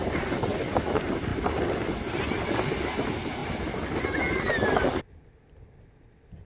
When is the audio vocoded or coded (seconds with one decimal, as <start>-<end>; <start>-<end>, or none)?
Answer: none